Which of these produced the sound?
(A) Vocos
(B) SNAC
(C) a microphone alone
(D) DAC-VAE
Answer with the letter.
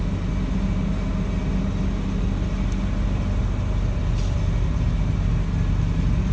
C